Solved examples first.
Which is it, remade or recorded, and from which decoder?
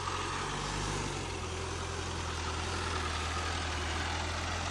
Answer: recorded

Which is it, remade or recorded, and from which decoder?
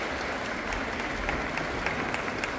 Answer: recorded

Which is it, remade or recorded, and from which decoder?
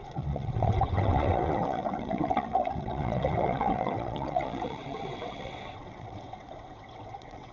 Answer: remade, vocoder, WaveNeXt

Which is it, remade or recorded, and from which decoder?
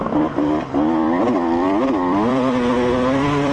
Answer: remade, vocoder, BigVGAN v2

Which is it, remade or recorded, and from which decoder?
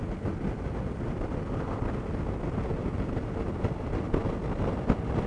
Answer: recorded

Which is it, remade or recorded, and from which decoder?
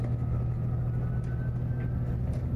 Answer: recorded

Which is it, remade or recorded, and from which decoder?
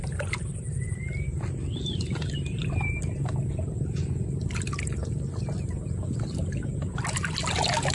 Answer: recorded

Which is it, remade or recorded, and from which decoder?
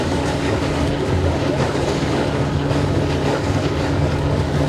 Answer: remade, codec, DAC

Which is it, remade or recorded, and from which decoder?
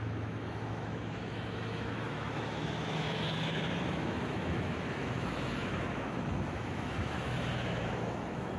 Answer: remade, autoencoder, DAC-VAE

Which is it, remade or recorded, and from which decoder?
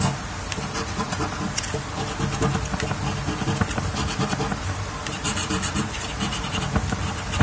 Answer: remade, vocoder, BigVGAN v2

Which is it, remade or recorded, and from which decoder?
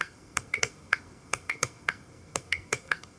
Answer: remade, codec, SNAC